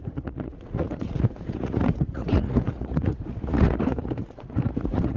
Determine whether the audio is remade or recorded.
remade